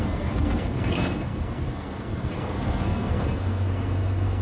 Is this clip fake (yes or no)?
yes